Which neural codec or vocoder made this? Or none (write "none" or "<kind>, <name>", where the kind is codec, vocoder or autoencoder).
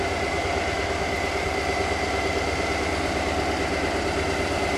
none